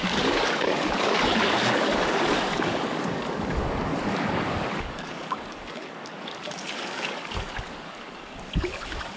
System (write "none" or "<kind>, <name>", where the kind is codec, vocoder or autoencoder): codec, DAC